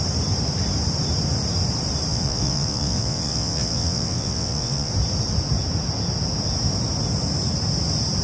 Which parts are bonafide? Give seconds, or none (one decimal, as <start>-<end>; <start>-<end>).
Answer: 0.0-2.1; 4.9-8.2